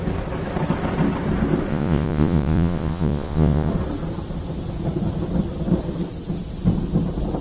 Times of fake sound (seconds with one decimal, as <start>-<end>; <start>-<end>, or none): 1.7-3.7